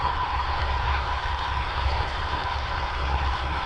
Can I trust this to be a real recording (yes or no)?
no